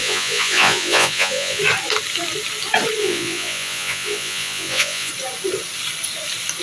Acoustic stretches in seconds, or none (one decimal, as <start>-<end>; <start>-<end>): 1.6-3.0; 5.1-6.6